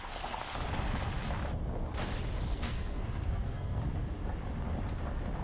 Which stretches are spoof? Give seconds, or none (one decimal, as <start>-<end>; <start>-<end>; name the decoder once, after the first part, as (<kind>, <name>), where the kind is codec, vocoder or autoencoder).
2.5-3.8 (codec, SNAC)